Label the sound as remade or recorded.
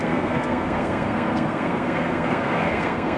remade